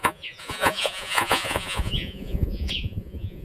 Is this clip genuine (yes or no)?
no